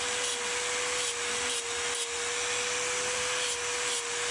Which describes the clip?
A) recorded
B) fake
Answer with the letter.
A